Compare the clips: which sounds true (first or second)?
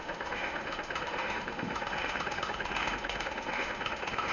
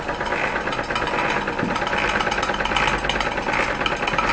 second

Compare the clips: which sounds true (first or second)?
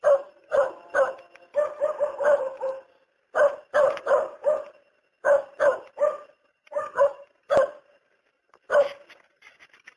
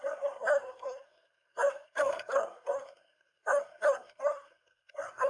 first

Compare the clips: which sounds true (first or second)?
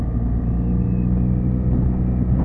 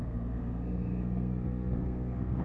first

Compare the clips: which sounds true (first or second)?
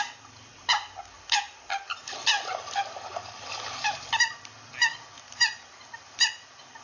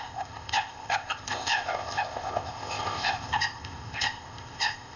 first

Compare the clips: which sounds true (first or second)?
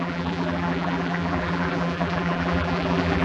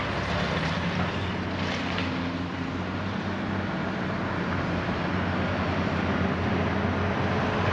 second